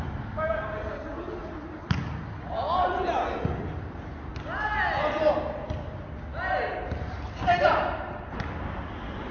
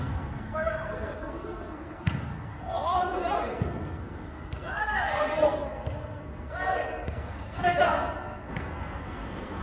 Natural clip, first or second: first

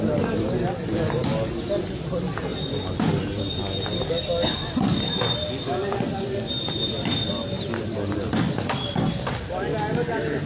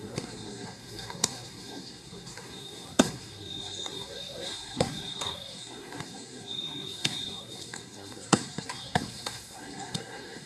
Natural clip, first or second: first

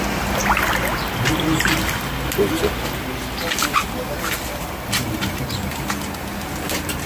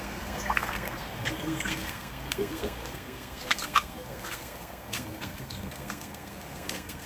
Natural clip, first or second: first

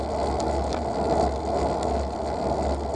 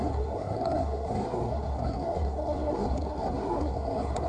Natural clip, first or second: first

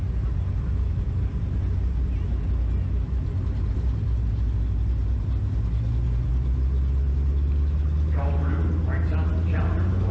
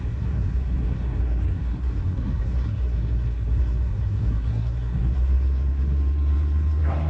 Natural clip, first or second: first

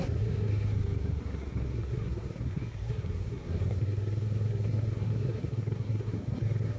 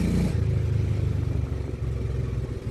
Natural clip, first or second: second